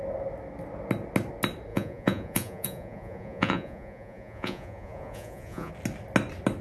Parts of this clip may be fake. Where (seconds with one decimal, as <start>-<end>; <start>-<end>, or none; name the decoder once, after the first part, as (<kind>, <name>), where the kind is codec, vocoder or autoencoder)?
1.7-5.7 (vocoder, Vocos)